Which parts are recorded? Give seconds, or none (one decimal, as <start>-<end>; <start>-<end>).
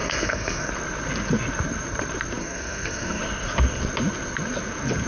0.7-2.4; 3.2-5.1